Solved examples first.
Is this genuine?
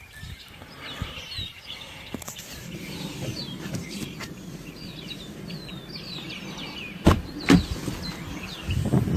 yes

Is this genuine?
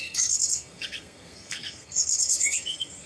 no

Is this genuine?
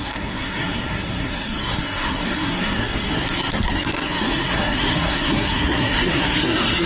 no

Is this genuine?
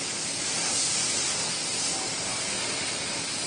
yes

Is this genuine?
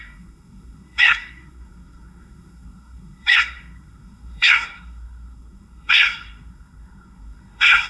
no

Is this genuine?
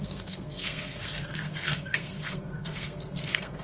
no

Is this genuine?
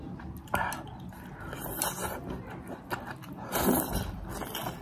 yes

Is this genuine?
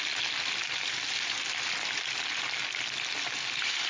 yes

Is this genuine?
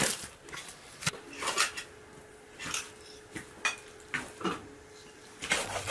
yes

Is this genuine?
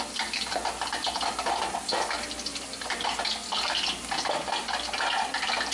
yes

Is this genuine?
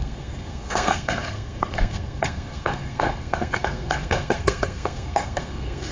no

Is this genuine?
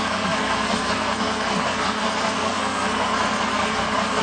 no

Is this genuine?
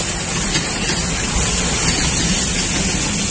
yes